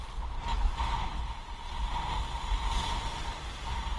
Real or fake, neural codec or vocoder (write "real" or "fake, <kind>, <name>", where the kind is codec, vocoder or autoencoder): real